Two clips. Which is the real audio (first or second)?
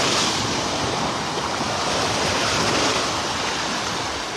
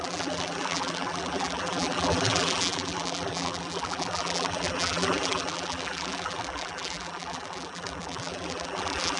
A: first